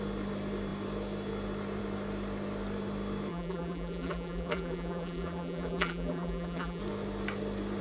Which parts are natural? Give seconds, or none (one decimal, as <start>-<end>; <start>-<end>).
0.0-3.3; 6.8-7.8